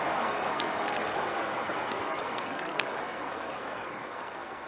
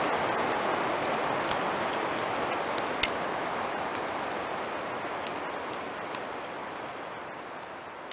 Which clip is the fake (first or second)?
first